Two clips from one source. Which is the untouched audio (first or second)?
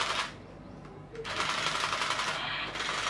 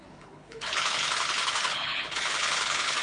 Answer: first